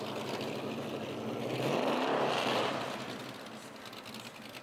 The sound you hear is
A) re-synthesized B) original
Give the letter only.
B